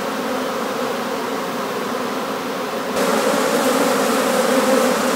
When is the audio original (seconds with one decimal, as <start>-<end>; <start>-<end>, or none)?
0.0-5.2